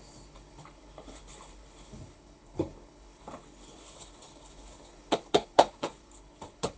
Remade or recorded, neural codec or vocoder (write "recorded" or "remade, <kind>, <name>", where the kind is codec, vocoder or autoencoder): remade, codec, HILCodec